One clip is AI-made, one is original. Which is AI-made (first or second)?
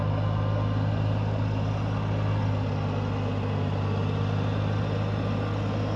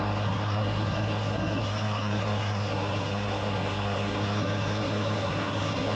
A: second